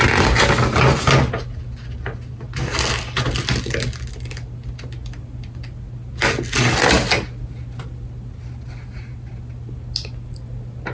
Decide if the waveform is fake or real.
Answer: real